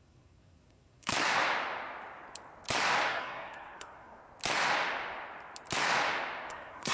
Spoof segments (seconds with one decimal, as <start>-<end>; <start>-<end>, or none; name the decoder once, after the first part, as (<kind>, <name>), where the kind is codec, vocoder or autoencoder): 0.0-1.1 (codec, SNAC); 3.1-4.2; 6.5-6.9